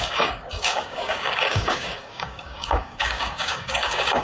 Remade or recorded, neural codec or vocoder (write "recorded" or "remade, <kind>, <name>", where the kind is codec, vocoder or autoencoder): remade, codec, DAC